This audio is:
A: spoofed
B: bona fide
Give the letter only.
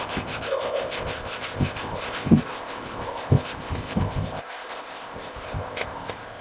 A